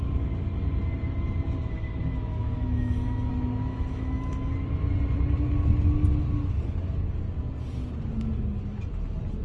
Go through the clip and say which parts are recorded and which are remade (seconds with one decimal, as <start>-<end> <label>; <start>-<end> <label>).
0.0-2.3 recorded; 2.3-3.3 remade; 3.3-3.7 recorded; 3.7-4.5 remade; 4.5-9.4 recorded

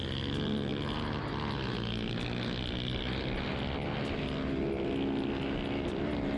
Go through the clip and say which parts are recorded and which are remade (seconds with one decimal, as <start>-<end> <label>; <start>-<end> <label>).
0.0-6.4 recorded

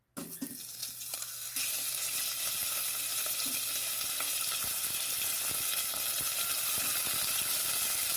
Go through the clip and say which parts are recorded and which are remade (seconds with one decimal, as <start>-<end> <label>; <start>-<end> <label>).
0.0-8.2 recorded

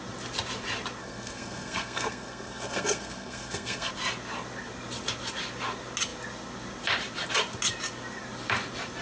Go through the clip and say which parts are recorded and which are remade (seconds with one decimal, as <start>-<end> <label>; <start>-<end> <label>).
0.0-1.0 recorded; 1.0-3.9 remade; 3.9-9.0 recorded

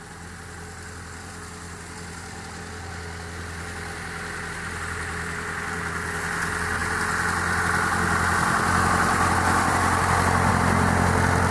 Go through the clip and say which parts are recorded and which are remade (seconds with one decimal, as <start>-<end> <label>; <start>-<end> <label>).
0.0-11.5 recorded

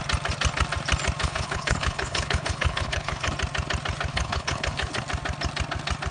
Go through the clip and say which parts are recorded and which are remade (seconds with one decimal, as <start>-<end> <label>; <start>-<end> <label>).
0.0-1.2 recorded; 1.2-3.3 remade; 3.3-4.1 recorded; 4.1-5.0 remade; 5.0-6.1 recorded